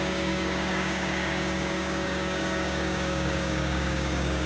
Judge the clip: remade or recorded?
remade